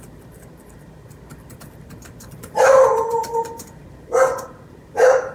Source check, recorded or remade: remade